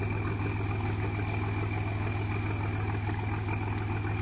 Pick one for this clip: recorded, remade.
recorded